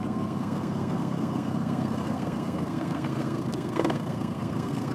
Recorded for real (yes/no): no